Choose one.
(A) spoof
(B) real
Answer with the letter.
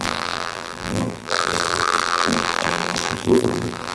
A